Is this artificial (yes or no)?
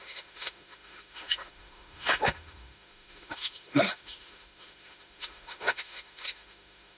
yes